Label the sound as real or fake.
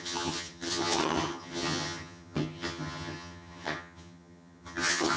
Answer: fake